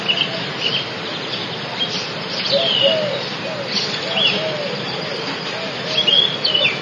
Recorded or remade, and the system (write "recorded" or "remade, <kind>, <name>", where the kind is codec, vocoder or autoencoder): recorded